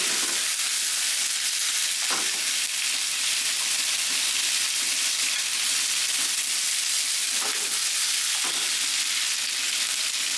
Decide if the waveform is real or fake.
real